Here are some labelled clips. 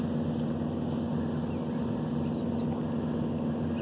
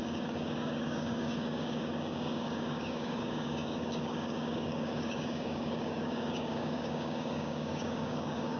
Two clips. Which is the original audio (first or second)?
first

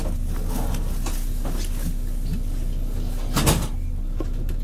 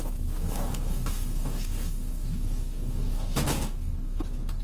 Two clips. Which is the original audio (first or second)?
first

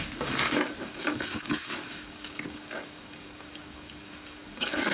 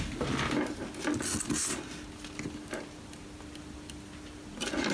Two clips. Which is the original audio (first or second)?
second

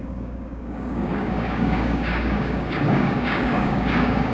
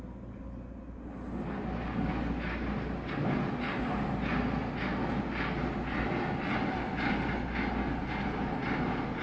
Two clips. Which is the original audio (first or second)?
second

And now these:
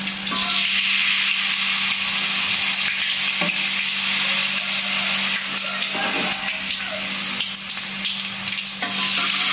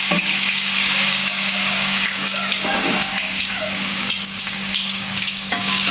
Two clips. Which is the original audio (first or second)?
first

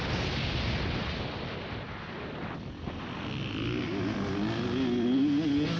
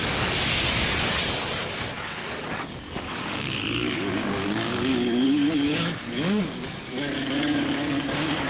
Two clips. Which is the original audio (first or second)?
first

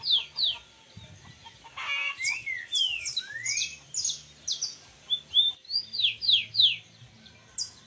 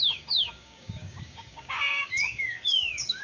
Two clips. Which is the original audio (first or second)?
first